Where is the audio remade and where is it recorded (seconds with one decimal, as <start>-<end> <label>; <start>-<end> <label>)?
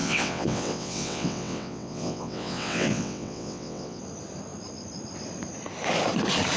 0.0-4.0 remade; 4.0-6.6 recorded